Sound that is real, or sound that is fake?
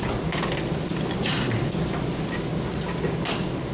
real